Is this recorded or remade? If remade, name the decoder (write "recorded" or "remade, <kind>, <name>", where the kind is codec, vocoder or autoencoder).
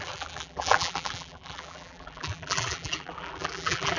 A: remade, vocoder, BigVGAN v2